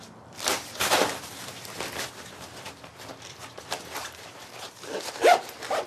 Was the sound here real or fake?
fake